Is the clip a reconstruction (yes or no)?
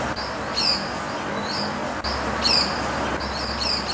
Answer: no